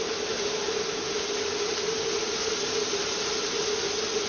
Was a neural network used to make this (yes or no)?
no